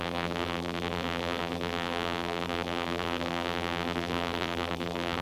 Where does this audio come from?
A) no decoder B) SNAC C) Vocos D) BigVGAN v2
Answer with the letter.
D